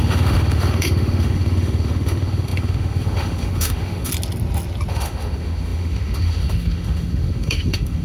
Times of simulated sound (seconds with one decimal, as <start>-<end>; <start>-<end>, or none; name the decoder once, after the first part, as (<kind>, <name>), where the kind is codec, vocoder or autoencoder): 0.0-4.1 (autoencoder, DAC-VAE); 4.9-8.0